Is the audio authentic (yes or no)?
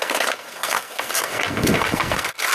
no